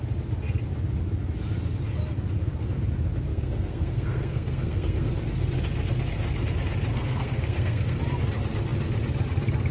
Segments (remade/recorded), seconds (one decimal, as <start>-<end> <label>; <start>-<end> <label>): 0.0-3.3 recorded; 3.3-5.1 remade; 5.1-6.9 recorded; 6.9-8.0 remade; 8.0-9.7 recorded